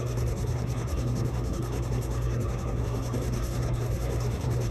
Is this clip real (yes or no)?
no